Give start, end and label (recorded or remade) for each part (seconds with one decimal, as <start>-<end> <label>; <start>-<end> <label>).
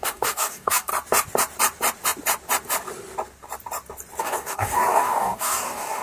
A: 0.0-0.9 remade; 0.9-4.2 recorded; 4.2-6.0 remade